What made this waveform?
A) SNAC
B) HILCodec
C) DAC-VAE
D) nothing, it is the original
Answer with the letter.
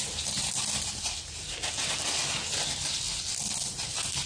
D